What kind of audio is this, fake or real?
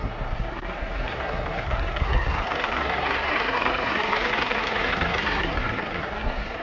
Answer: fake